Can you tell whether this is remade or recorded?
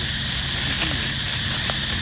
recorded